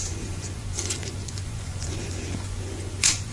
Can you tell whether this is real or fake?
fake